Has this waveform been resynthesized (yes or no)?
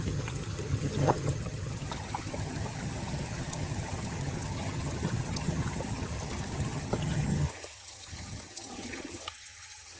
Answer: yes